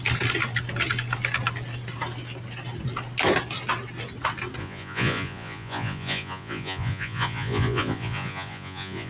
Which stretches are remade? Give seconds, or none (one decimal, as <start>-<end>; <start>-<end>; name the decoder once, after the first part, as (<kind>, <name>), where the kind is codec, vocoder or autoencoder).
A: 4.6-9.1 (vocoder, Vocos)